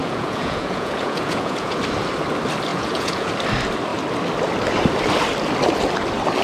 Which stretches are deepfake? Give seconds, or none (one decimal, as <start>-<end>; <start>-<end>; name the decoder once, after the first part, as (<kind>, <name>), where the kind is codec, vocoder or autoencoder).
0.0-1.8 (vocoder, Vocos); 2.7-3.3